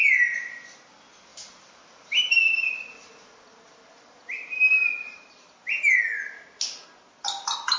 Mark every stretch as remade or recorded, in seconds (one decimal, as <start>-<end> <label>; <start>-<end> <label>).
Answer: 0.0-1.3 recorded; 1.3-6.0 remade; 6.0-7.8 recorded